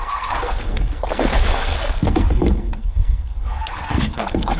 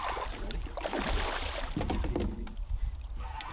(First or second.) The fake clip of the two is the first